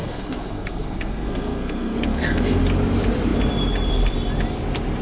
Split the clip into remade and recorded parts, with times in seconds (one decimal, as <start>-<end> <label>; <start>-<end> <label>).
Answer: 0.0-2.6 remade; 2.6-5.0 recorded